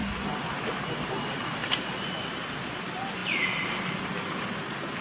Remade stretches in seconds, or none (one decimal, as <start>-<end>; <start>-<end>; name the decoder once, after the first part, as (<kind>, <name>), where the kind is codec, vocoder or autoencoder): 1.6-2.5 (vocoder, BigVGAN v2); 3.2-4.4